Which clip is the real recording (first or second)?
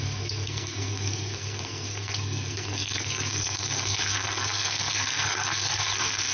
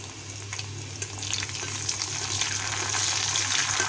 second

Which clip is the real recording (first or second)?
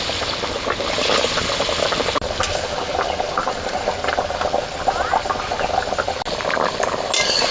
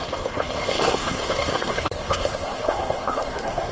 first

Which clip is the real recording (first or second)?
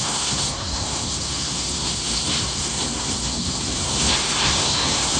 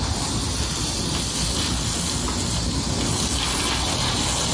second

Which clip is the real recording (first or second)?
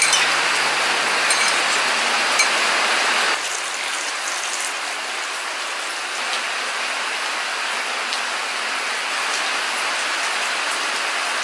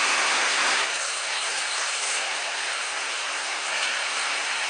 first